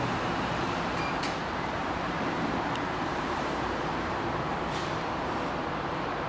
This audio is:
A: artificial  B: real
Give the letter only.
A